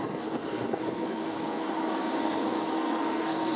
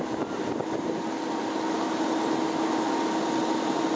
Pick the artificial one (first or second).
first